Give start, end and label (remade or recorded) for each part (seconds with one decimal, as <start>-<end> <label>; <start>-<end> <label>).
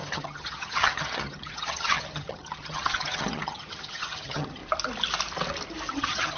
0.0-4.6 remade; 4.6-5.9 recorded; 5.9-6.4 remade